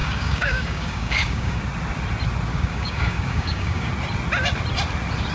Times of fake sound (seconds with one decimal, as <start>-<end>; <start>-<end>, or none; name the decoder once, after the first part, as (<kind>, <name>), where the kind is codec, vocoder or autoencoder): 0.0-1.6 (codec, DAC); 2.5-3.9